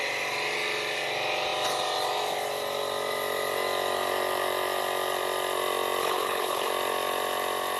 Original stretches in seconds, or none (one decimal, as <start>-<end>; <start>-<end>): 0.0-6.0; 6.7-7.8